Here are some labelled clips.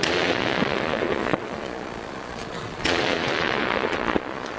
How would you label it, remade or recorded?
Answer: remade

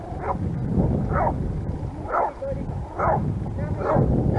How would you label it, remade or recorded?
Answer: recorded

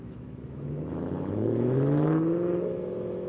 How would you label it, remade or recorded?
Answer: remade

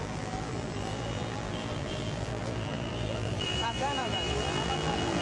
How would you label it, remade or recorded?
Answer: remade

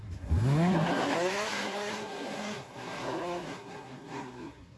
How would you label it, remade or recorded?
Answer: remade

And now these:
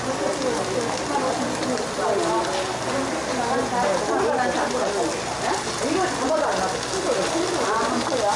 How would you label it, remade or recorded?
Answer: recorded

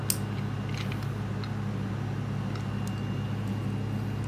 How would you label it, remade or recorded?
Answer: recorded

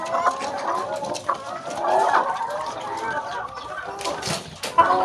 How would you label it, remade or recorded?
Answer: recorded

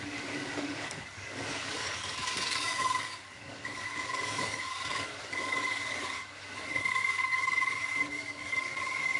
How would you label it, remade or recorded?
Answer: remade